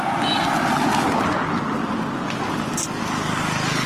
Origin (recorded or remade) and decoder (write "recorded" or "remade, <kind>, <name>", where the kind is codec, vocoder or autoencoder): recorded